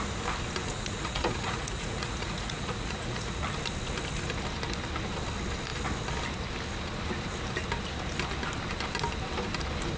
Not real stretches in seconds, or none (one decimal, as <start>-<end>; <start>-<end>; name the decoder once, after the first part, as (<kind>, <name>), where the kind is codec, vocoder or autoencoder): 0.6-3.4 (vocoder, Vocos)